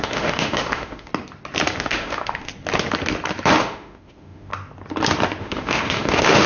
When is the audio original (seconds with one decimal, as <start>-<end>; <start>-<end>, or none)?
1.1-1.8; 2.5-3.6; 4.5-5.4